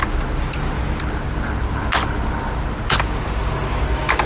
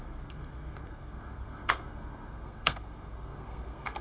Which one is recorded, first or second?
first